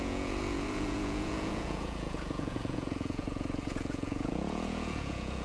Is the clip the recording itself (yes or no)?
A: no